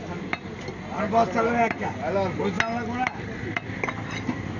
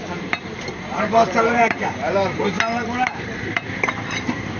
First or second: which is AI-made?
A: second